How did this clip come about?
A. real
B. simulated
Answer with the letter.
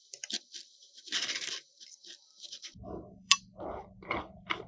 B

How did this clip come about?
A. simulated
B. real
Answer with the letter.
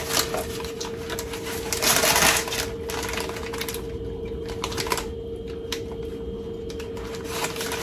B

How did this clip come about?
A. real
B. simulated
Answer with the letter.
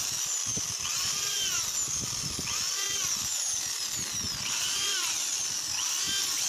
A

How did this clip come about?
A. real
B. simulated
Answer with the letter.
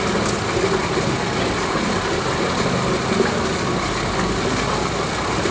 A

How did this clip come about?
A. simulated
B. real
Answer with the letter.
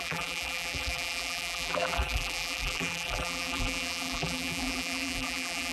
A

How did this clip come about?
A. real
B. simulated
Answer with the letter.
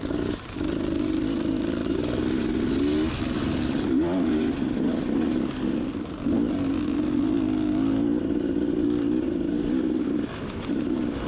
A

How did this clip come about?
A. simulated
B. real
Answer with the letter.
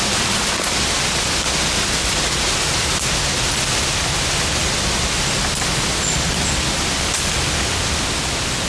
B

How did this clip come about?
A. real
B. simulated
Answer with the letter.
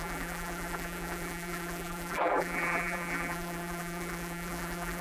B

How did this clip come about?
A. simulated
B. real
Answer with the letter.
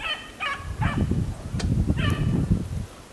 B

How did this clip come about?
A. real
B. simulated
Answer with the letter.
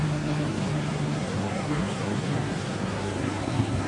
B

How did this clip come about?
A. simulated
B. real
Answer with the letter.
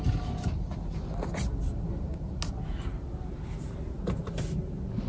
B